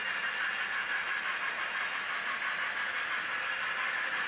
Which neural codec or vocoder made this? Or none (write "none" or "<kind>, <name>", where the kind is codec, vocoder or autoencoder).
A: none